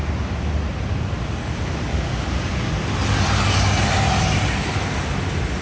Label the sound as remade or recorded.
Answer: recorded